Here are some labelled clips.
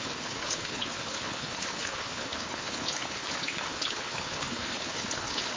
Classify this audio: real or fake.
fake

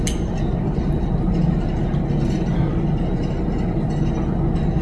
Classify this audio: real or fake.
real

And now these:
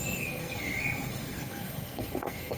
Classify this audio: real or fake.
fake